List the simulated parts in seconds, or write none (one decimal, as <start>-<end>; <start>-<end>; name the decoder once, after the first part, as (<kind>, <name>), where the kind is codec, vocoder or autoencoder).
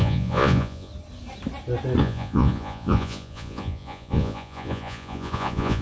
0.0-0.9 (vocoder, Vocos); 2.0-5.8